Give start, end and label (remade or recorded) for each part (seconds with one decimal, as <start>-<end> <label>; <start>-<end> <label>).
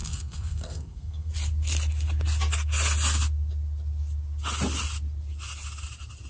0.0-1.3 remade; 1.3-6.3 recorded